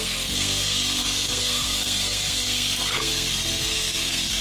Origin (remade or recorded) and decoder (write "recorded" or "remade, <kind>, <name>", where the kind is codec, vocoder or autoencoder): remade, codec, SNAC